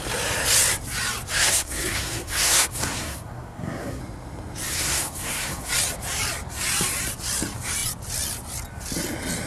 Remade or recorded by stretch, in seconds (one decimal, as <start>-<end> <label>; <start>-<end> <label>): 0.0-1.3 recorded; 1.3-4.0 remade; 4.0-4.7 recorded; 4.7-5.7 remade; 5.7-9.5 recorded